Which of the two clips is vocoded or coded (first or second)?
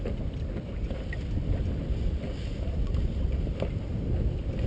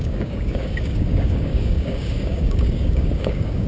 second